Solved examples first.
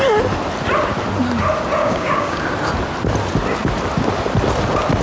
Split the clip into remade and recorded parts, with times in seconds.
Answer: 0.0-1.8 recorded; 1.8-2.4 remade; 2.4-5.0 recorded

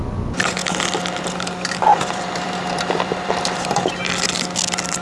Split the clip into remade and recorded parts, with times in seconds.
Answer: 0.0-1.9 recorded; 1.9-3.3 remade; 3.3-5.0 recorded

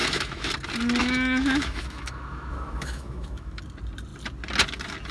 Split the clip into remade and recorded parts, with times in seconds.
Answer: 0.0-0.5 remade; 0.5-1.0 recorded; 1.0-3.6 remade; 3.6-5.1 recorded

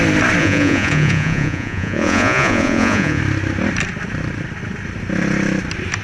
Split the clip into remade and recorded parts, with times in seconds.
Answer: 0.0-0.4 recorded; 0.4-3.2 remade; 3.2-6.0 recorded

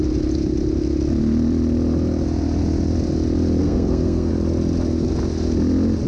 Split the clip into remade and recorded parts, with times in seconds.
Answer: 0.0-3.6 recorded; 3.6-4.3 remade; 4.3-6.1 recorded